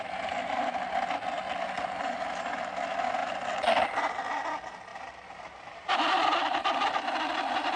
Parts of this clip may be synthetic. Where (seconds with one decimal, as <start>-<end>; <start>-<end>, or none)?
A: none